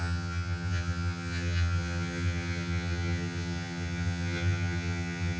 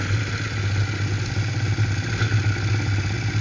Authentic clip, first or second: second